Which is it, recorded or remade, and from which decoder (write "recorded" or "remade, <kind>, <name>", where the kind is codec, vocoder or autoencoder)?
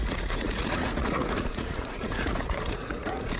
remade, vocoder, Vocos